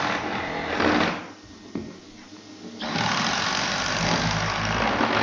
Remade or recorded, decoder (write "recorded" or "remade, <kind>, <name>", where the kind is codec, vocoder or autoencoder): recorded